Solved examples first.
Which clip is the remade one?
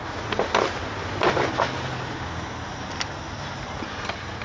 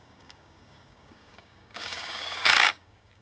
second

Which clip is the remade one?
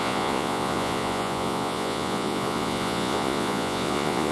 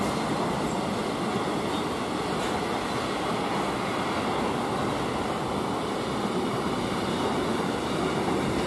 first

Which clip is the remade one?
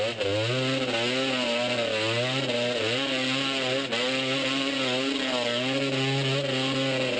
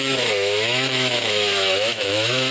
second